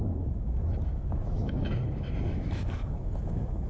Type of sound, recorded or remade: remade